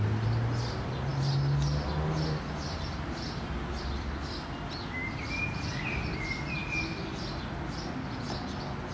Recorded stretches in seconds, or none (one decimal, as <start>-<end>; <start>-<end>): 0.0-8.9